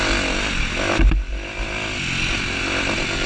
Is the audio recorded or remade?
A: recorded